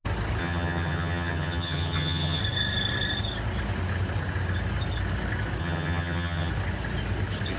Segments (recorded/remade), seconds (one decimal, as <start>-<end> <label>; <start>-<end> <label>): 0.0-0.4 recorded; 0.4-2.4 remade; 2.4-5.6 recorded; 5.6-6.5 remade; 6.5-7.6 recorded